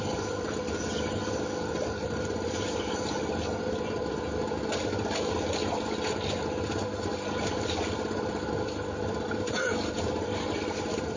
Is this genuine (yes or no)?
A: yes